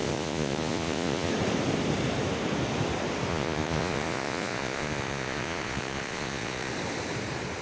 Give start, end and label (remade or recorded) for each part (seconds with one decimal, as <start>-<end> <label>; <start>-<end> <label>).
0.0-1.3 remade; 1.3-3.3 recorded; 3.3-6.7 remade; 6.7-7.6 recorded